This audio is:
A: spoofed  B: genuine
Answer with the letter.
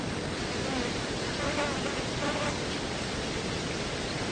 B